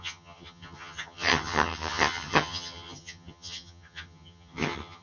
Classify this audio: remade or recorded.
remade